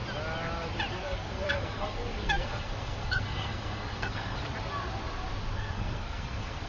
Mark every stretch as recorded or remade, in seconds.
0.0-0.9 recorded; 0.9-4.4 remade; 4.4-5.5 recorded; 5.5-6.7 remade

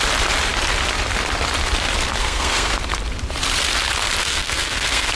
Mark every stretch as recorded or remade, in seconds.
0.0-2.2 recorded; 2.2-2.7 remade; 2.7-4.2 recorded; 4.2-5.1 remade

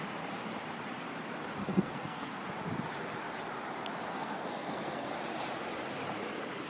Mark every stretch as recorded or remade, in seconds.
0.0-1.6 recorded; 1.6-2.4 remade; 2.4-4.1 recorded; 4.1-5.1 remade; 5.1-6.7 recorded

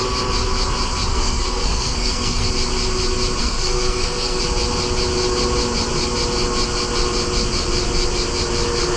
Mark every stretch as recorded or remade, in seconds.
0.0-1.1 recorded; 1.1-2.5 remade; 2.5-3.4 recorded; 3.4-4.4 remade; 4.4-9.0 recorded

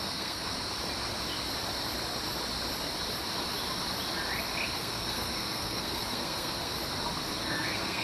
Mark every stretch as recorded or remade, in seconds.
0.0-0.5 remade; 0.5-4.8 recorded; 4.8-6.7 remade; 6.7-7.4 recorded; 7.4-8.0 remade

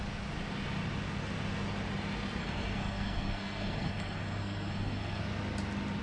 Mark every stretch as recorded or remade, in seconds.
0.0-2.4 recorded; 2.4-5.2 remade; 5.2-6.0 recorded